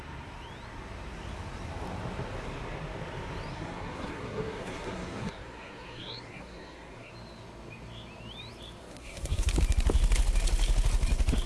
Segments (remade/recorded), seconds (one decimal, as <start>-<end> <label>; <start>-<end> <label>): 0.0-3.5 recorded; 3.5-7.1 remade; 7.1-8.8 recorded; 8.8-9.5 remade; 9.5-11.5 recorded